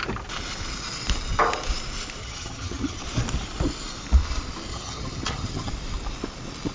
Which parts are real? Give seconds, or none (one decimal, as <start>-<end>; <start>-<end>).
0.0-2.2; 3.0-4.7; 5.7-6.7